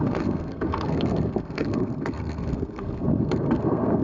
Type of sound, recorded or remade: remade